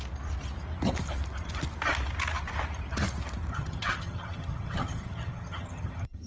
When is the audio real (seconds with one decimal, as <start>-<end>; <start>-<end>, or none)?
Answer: 0.0-3.5

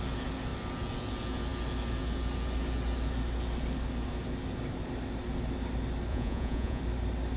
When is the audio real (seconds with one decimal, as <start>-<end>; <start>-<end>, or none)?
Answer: 0.0-6.1; 6.8-7.4

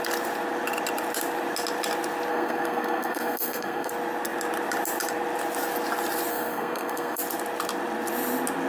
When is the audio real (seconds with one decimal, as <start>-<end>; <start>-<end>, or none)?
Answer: 0.0-2.3; 3.9-6.3; 7.2-8.7